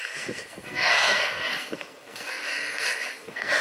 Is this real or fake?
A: fake